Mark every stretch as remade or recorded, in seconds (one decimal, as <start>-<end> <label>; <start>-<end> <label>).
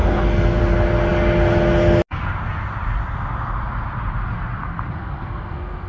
0.0-5.0 recorded; 5.0-5.9 remade